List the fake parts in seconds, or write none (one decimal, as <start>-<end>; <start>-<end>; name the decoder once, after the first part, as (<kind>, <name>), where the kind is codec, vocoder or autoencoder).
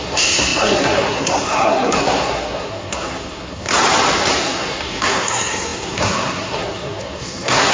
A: 0.0-3.7 (codec, SNAC); 4.4-7.7